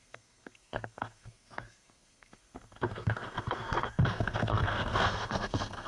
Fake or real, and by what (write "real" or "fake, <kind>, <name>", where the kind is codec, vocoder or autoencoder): fake, codec, SNAC